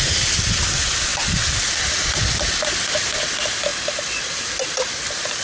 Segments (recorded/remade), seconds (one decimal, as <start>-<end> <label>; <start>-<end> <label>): 0.0-5.4 recorded